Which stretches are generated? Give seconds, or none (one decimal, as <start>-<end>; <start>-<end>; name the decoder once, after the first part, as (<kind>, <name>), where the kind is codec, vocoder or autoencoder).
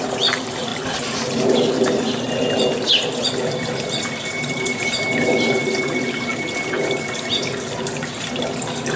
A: none